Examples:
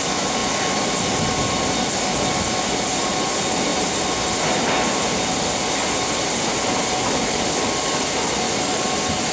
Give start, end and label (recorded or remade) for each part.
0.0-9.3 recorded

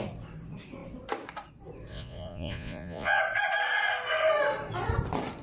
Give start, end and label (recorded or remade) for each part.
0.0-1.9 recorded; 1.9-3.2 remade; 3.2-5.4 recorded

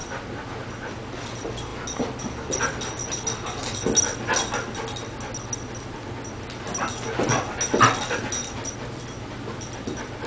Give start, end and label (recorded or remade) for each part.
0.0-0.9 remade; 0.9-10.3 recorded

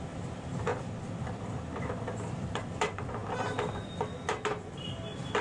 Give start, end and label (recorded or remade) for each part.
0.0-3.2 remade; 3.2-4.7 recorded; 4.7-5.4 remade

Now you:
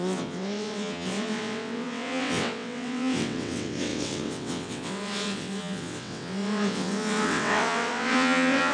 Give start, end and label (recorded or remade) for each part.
0.0-8.7 remade